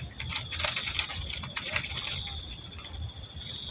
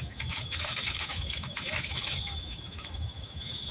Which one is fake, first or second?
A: second